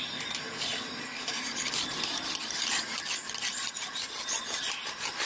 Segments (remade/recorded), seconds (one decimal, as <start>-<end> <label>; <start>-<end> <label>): 0.0-5.3 recorded